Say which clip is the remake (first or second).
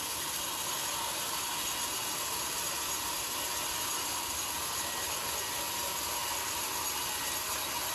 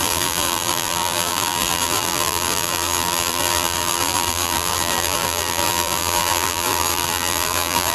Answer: second